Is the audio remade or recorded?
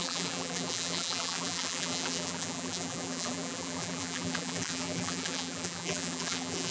remade